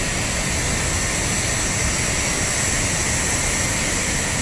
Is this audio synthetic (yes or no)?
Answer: no